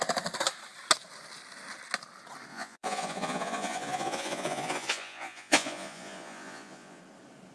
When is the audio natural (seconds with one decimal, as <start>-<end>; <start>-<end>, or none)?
0.0-2.5; 7.0-7.5